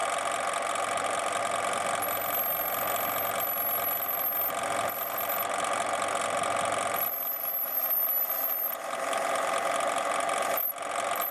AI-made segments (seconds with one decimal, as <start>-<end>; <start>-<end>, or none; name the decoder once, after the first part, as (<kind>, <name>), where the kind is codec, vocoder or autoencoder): none

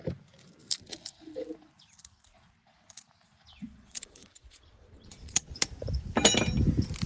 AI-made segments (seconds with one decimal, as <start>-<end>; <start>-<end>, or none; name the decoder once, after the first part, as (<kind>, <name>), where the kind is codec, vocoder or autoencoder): 3.5-5.6 (vocoder, Vocos)

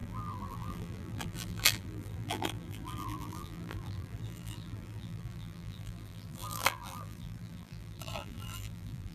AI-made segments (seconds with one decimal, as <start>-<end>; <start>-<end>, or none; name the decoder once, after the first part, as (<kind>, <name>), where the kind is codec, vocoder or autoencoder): 0.0-9.1 (vocoder, BigVGAN v2)

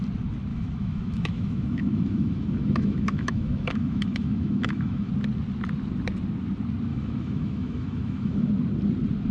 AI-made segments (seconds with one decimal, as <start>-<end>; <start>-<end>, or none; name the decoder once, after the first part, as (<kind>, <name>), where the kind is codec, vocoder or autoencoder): 0.5-5.1 (autoencoder, DAC-VAE); 6.9-8.5